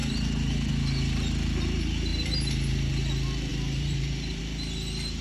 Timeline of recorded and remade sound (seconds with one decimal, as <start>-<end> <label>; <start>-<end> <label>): 0.0-0.7 remade; 0.7-2.1 recorded; 2.1-2.9 remade; 2.9-3.5 recorded; 3.5-4.4 remade; 4.4-5.2 recorded